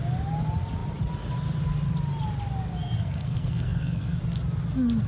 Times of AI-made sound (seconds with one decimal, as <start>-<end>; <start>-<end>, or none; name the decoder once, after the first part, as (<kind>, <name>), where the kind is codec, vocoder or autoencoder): 2.8-4.2 (codec, SNAC)